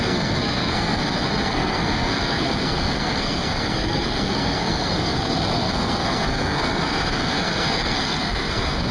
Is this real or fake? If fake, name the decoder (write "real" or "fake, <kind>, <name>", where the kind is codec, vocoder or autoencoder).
fake, codec, SNAC